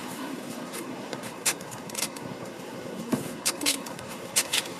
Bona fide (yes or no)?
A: no